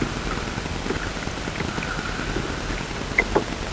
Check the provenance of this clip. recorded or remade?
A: recorded